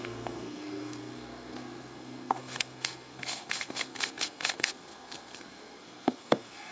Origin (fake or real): fake